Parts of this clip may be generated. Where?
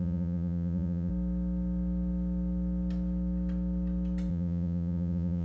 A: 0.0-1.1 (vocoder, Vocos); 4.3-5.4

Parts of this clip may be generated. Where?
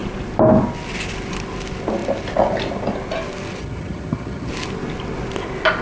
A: 3.6-4.5 (vocoder, HiFi-GAN)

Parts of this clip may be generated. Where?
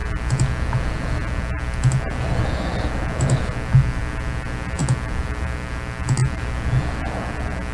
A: 4.8-5.7 (vocoder, BigVGAN v2)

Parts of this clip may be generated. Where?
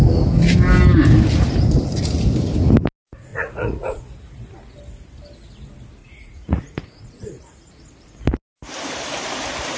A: 3.3-4.0 (vocoder, Vocos); 6.0-7.7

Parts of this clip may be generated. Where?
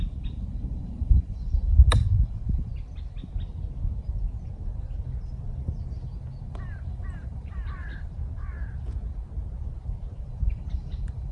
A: 0.0-2.7 (vocoder, BigVGAN v2); 6.5-7.9; 10.2-11.3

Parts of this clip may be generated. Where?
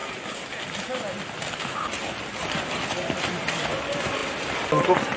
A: none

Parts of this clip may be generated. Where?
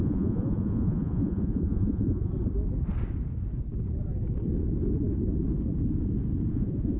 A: 0.0-2.3 (vocoder, Vocos); 6.5-7.0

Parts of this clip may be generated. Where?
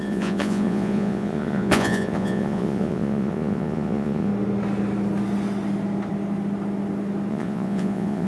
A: 0.0-4.3 (vocoder, Vocos); 7.3-8.3